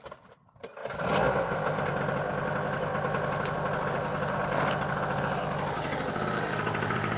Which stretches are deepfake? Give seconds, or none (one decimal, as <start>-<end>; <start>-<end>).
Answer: none